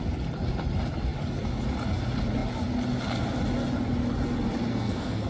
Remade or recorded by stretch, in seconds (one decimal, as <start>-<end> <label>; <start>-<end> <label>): 0.0-4.7 recorded; 4.7-5.3 remade